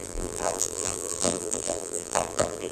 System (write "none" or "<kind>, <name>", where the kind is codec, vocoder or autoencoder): vocoder, BigVGAN v2